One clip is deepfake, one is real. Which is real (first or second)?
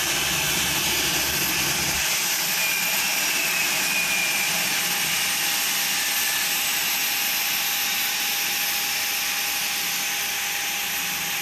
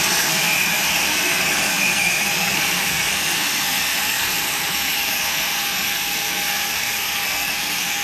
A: first